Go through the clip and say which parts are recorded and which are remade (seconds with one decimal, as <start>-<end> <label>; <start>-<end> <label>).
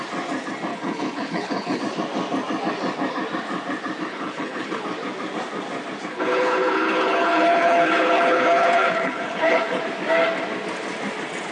0.0-0.7 recorded; 0.7-1.8 remade; 1.8-4.1 recorded; 4.1-4.8 remade; 4.8-6.1 recorded; 6.1-9.8 remade; 9.8-11.5 recorded